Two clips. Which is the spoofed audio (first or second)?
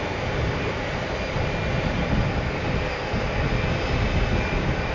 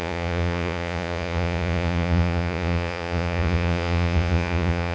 second